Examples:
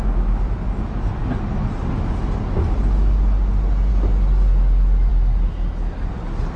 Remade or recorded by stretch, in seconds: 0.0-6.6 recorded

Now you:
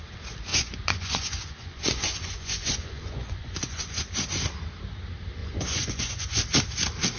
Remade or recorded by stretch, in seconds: 0.0-0.5 recorded; 0.5-4.0 remade; 4.0-5.4 recorded; 5.4-6.4 remade; 6.4-7.2 recorded

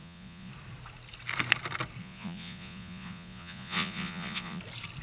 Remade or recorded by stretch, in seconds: 0.0-0.5 remade; 0.5-2.0 recorded; 2.0-4.6 remade; 4.6-5.0 recorded

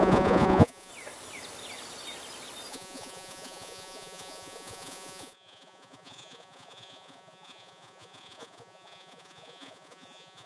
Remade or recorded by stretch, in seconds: 0.0-0.9 remade; 0.9-2.7 recorded; 2.7-10.5 remade

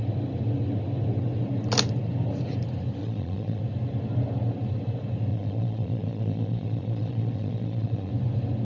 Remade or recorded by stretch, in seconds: 0.0-3.0 recorded; 3.0-3.6 remade; 3.6-5.3 recorded; 5.3-8.1 remade; 8.1-8.6 recorded

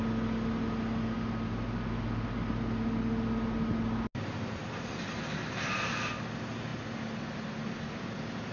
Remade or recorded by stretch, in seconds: 0.0-8.5 recorded